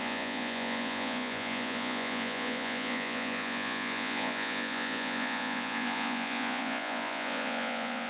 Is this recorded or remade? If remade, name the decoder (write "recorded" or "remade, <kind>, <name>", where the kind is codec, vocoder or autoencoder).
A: remade, vocoder, Vocos